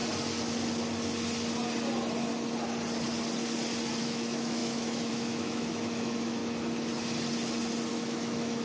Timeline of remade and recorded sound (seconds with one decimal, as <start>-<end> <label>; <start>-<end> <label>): 0.0-4.0 recorded; 4.0-6.4 remade; 6.4-7.9 recorded; 7.9-8.6 remade